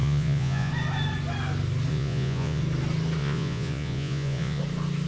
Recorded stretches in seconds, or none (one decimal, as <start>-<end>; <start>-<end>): 0.7-1.9; 2.6-3.2; 4.6-5.1